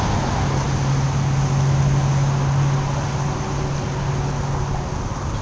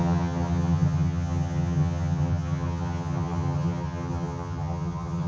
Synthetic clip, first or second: second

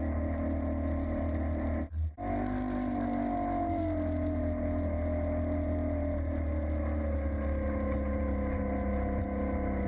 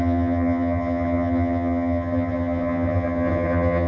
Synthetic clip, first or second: second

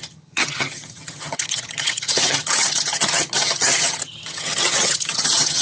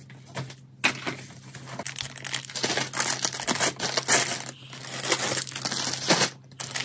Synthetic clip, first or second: first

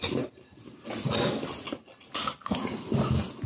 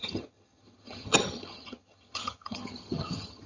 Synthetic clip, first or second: second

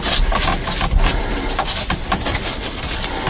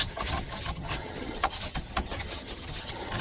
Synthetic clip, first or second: second